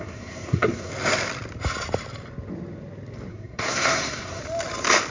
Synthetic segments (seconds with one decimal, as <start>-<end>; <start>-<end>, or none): 0.0-0.9; 3.3-4.4